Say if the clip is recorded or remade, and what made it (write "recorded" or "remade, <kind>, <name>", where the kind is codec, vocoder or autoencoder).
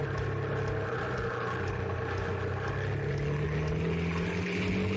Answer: recorded